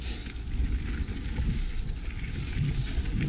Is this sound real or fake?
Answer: real